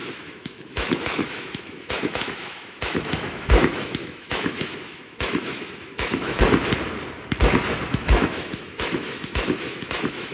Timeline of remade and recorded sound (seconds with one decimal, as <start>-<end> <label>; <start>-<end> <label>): 0.0-6.4 remade; 6.4-7.9 recorded; 7.9-10.3 remade